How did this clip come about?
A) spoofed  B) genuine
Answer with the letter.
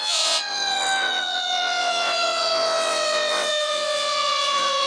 A